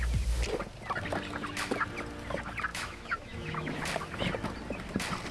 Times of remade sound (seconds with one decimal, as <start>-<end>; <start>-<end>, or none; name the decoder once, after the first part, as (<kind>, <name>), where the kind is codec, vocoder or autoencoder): 2.7-3.8 (autoencoder, DAC-VAE)